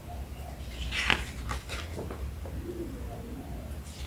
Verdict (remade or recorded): recorded